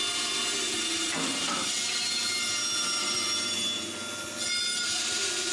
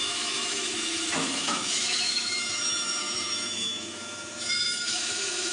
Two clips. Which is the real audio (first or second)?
first